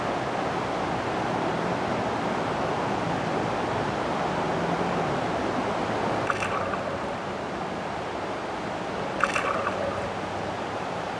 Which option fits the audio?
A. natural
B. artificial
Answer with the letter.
A